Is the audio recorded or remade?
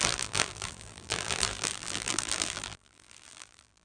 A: remade